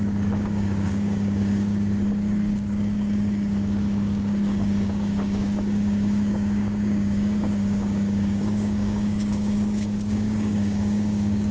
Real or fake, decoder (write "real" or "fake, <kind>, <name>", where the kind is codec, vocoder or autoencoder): fake, codec, DAC